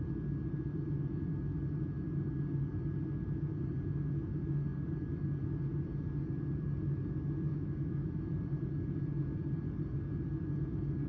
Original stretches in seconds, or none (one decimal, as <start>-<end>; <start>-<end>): 0.0-7.5; 8.2-11.1